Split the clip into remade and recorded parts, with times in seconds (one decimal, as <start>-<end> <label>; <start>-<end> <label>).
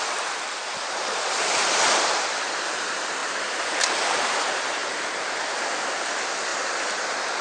0.0-6.5 remade; 6.5-7.4 recorded